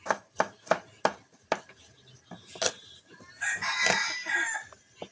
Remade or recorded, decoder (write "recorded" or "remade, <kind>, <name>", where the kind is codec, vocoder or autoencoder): recorded